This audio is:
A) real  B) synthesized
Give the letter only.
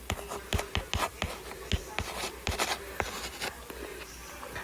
A